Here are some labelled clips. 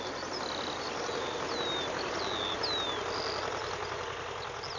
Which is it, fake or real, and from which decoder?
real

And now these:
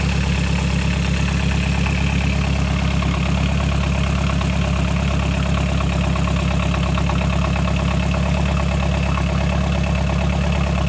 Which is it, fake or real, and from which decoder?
real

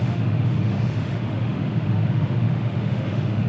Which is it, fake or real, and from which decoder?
fake, autoencoder, DAC-VAE